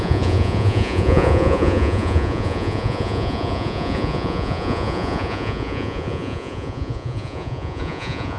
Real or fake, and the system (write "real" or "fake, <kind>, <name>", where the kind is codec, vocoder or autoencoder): fake, vocoder, Vocos